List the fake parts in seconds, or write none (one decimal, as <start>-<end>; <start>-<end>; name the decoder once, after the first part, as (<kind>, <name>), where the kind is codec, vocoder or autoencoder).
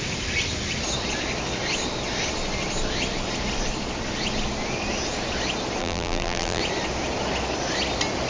5.8-6.6 (vocoder, BigVGAN v2)